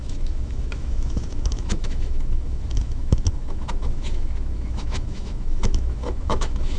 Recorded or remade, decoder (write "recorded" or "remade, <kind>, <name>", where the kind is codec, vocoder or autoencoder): remade, autoencoder, DAC-VAE